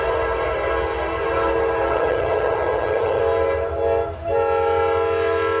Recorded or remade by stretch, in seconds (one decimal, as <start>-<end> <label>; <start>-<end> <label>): 0.0-1.9 recorded; 1.9-3.2 remade; 3.2-5.6 recorded